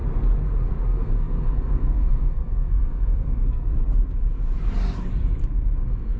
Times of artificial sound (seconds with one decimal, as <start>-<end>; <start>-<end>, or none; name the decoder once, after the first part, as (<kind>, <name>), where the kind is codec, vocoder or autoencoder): 0.7-3.7 (codec, SNAC); 5.4-6.2